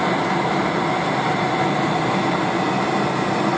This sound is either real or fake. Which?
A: real